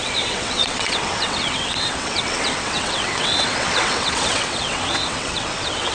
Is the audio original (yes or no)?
no